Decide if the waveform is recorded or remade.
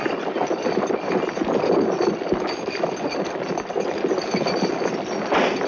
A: recorded